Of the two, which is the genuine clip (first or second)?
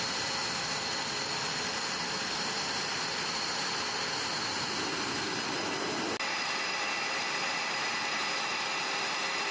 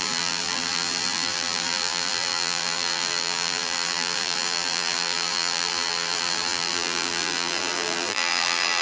first